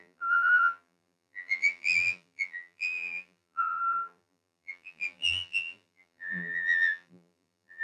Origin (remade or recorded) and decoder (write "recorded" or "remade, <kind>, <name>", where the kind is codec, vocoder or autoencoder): remade, vocoder, BigVGAN v2